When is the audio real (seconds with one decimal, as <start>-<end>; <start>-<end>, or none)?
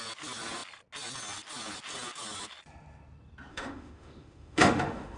0.0-3.5